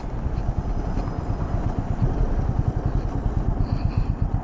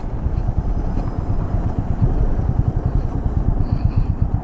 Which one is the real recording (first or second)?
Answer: first